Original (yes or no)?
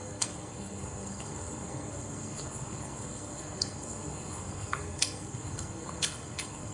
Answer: no